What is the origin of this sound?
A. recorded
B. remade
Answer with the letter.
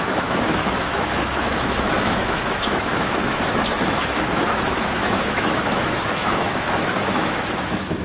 B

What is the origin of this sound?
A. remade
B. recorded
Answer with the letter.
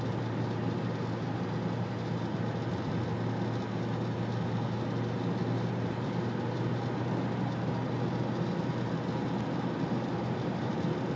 B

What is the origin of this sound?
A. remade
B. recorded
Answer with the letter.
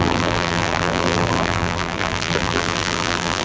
A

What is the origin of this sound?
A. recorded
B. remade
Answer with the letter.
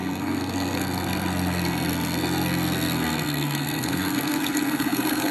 B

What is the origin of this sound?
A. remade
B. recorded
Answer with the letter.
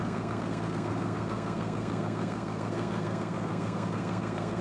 A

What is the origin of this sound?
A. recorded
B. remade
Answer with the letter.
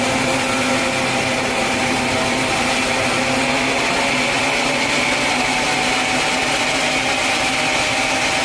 A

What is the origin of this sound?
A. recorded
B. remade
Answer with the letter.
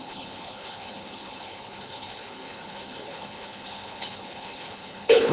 B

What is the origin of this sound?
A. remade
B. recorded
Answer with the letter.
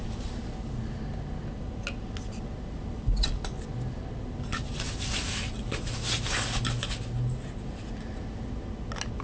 B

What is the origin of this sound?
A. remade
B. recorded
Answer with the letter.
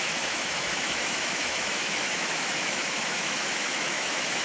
A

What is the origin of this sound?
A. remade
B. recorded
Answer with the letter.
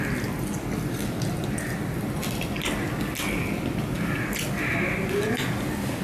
B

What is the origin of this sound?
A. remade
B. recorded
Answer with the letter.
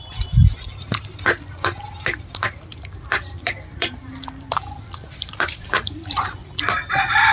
A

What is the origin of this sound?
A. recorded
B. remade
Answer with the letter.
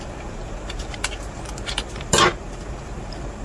B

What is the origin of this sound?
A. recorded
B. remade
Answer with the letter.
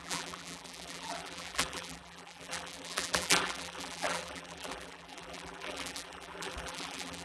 B